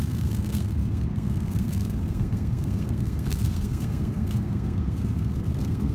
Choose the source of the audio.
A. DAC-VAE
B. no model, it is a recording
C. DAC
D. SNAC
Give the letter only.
D